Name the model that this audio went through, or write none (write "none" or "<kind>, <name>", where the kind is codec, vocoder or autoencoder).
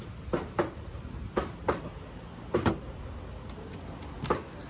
none